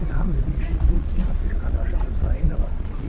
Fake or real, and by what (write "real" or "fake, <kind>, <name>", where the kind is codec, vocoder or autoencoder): fake, vocoder, Vocos